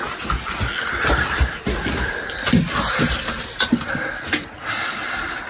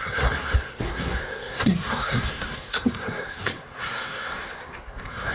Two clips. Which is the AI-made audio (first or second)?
second